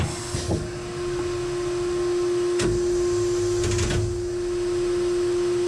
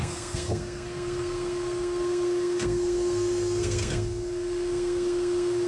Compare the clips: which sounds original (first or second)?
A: first